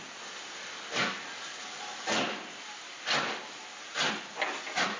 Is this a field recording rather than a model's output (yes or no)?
yes